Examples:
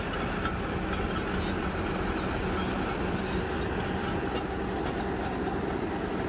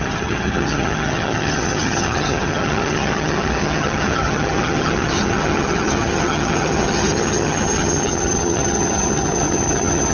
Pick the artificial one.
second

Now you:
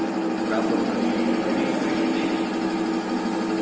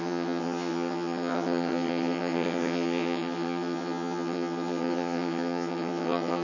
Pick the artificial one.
second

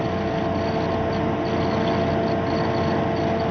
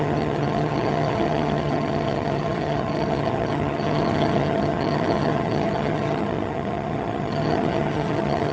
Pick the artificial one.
second